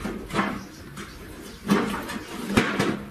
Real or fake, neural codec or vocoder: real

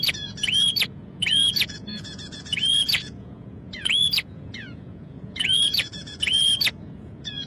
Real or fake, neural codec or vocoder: fake, vocoder, Vocos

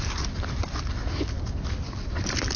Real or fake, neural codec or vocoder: real